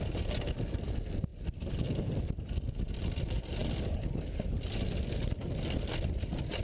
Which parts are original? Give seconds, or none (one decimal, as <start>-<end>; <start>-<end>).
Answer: 0.0-6.6